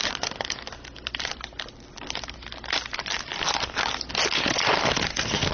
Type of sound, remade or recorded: recorded